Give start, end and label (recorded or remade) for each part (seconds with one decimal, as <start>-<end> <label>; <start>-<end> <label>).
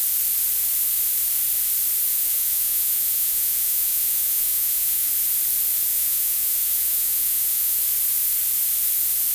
0.0-2.1 recorded; 2.1-5.1 remade; 5.1-5.9 recorded; 5.9-7.8 remade; 7.8-9.3 recorded